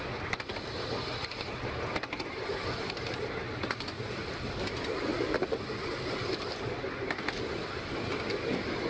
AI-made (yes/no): no